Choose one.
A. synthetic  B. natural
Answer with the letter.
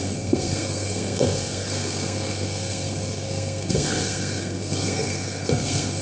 A